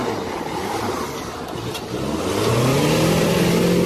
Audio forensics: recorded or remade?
recorded